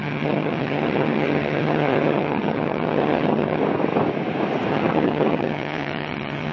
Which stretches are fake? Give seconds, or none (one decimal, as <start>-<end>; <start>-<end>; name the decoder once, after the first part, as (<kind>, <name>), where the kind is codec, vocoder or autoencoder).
0.0-3.6 (vocoder, HiFi-GAN); 4.7-6.5